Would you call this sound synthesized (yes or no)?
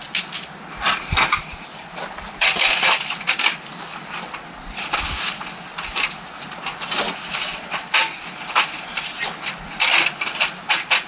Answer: no